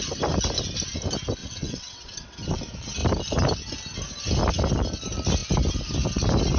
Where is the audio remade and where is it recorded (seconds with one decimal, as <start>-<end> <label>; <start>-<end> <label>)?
0.0-1.4 recorded; 1.4-2.6 remade; 2.6-6.6 recorded